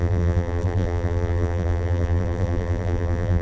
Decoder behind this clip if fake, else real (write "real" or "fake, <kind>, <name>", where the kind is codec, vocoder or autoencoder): fake, vocoder, BigVGAN v2